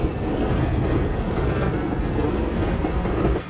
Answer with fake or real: fake